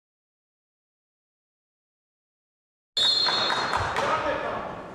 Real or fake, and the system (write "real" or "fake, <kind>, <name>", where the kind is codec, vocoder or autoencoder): real